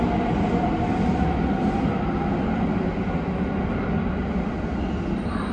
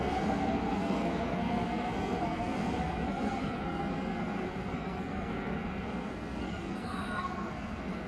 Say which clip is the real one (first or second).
first